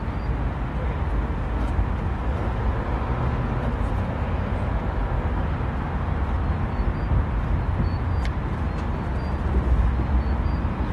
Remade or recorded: recorded